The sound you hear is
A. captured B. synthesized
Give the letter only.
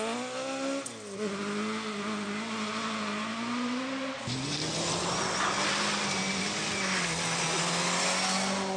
A